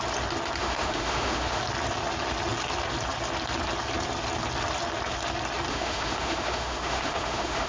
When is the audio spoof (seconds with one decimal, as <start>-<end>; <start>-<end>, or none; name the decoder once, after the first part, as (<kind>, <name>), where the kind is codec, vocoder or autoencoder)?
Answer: 0.6-1.6 (autoencoder, DAC-VAE); 5.7-7.7